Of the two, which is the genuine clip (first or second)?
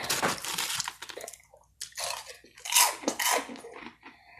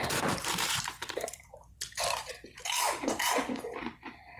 first